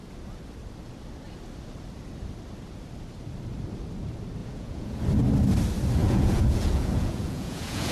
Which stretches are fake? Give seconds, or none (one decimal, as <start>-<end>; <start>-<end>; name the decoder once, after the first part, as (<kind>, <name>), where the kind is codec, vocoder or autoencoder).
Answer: 4.4-5.0 (vocoder, Vocos); 6.0-7.9